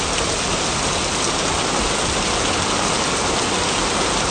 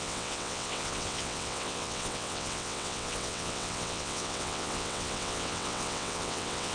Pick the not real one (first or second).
second